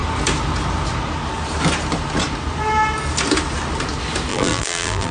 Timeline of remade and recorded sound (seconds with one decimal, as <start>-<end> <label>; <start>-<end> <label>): 0.0-4.3 recorded; 4.3-5.1 remade